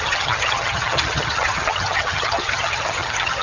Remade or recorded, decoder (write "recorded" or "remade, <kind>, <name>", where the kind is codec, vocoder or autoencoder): remade, vocoder, HiFi-GAN